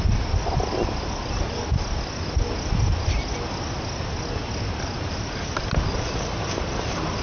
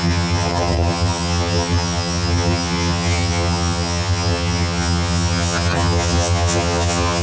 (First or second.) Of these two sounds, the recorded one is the first